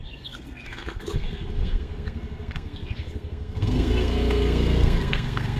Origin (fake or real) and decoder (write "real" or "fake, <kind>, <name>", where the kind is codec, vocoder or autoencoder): fake, codec, SNAC